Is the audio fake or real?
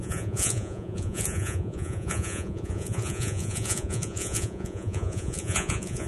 fake